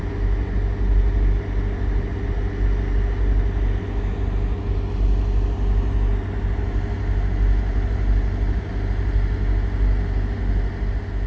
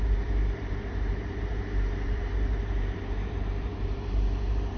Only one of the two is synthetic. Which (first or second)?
second